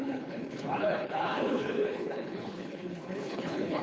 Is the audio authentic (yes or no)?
no